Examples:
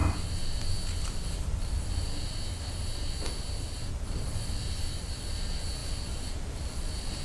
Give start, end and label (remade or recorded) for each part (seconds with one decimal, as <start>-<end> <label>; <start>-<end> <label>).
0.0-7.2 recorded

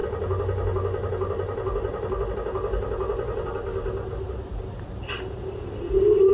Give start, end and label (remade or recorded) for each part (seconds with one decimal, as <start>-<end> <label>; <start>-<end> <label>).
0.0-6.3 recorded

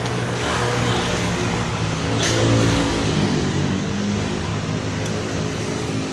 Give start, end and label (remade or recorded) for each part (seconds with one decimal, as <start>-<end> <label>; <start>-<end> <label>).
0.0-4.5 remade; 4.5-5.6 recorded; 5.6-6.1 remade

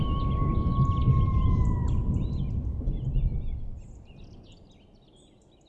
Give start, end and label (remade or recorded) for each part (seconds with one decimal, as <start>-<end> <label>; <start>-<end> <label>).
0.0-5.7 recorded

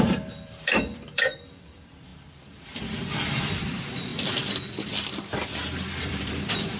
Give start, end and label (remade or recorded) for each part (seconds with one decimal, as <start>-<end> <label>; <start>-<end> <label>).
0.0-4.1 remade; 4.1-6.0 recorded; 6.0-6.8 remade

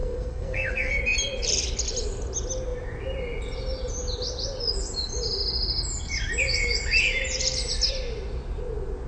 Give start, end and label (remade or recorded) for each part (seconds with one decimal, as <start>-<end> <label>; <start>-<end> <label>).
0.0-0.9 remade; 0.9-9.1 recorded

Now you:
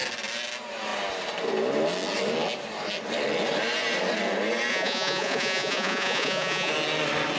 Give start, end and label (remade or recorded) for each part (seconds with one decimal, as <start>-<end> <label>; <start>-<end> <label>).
0.0-4.7 recorded; 4.7-6.7 remade; 6.7-7.4 recorded

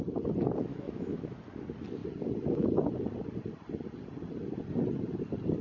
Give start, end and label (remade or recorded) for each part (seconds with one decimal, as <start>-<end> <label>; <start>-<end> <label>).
0.0-0.7 recorded; 0.7-1.4 remade; 1.4-5.6 recorded